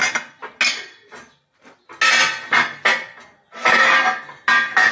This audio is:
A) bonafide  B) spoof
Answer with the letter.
A